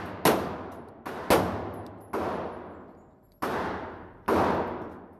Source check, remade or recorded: recorded